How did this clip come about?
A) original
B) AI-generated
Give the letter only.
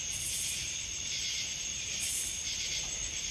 A